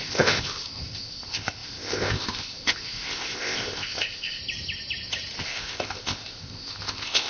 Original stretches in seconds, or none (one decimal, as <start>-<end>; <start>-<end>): 4.4-5.4